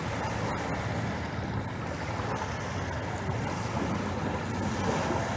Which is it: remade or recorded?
recorded